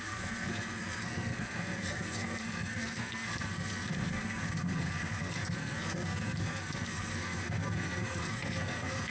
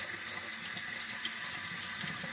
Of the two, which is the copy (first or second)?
first